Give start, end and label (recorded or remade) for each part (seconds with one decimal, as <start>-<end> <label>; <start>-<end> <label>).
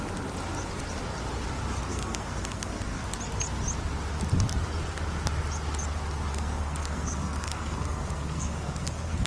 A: 0.0-1.9 recorded; 1.9-3.0 remade; 3.0-6.3 recorded; 6.3-9.3 remade